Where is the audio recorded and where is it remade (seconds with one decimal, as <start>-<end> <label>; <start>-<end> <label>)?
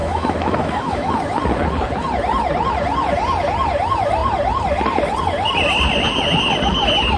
0.0-1.1 remade; 1.1-7.2 recorded